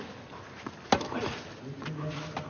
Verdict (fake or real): real